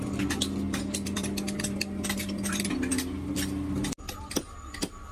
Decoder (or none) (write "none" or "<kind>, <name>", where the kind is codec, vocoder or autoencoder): none